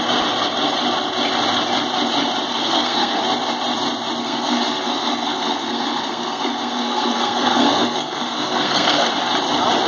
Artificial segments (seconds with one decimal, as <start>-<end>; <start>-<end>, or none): 2.5-3.2; 4.2-9.1